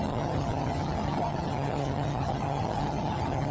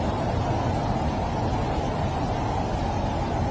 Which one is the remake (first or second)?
first